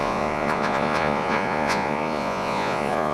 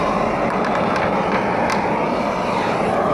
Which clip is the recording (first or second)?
second